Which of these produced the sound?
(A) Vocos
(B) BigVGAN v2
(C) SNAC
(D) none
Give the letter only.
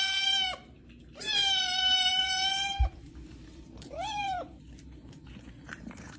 B